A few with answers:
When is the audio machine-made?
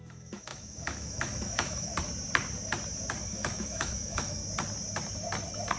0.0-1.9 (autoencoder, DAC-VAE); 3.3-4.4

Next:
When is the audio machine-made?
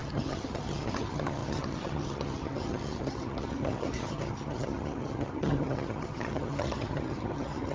0.0-7.7 (vocoder, HiFi-GAN)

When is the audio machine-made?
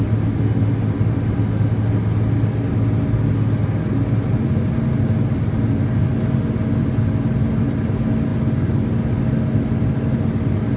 none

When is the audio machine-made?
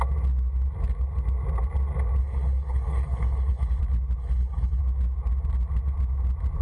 2.2-3.8 (codec, HILCodec); 4.2-4.8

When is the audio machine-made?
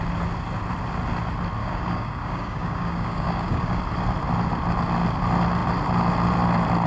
1.6-3.8 (codec, DAC)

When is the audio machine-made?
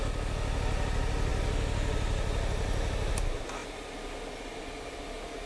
none